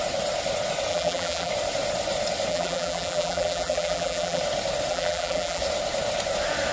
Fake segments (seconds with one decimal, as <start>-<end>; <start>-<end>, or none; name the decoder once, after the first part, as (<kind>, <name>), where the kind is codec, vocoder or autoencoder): 0.9-1.5 (vocoder, BigVGAN v2); 2.5-4.4; 4.9-5.6

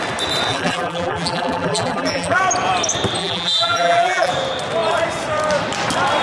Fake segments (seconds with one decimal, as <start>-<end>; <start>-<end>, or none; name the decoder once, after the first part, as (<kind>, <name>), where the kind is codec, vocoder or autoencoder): 0.5-2.4 (vocoder, BigVGAN v2); 3.2-4.3

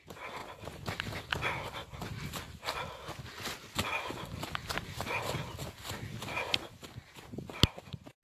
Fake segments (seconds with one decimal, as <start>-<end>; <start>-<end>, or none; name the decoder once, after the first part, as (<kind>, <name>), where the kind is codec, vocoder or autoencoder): none

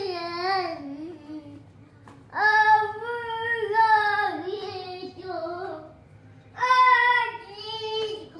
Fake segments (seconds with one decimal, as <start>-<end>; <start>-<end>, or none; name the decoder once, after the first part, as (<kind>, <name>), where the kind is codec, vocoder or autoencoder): 7.1-8.4 (vocoder, BigVGAN v2)